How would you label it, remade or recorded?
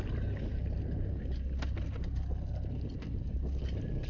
recorded